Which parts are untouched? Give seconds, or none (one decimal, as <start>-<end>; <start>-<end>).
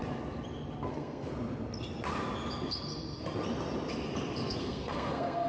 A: 0.0-0.9; 1.3-4.6